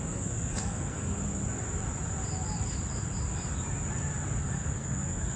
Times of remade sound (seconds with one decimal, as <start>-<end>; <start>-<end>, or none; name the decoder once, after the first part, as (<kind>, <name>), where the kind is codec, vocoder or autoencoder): 0.0-1.2 (codec, SNAC); 4.4-5.4